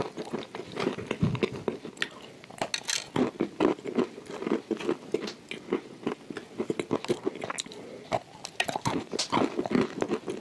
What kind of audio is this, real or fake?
real